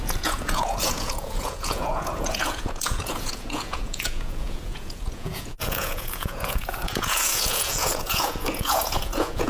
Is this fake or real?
fake